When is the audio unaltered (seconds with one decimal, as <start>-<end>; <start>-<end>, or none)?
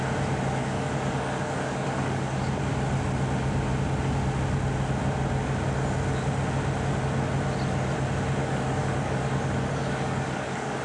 0.0-0.6; 2.6-8.4